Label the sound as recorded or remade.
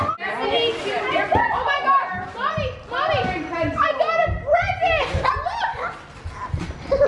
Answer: recorded